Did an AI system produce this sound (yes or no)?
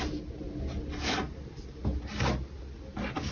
no